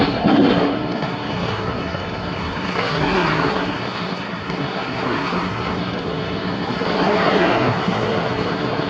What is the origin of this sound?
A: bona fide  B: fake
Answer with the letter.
B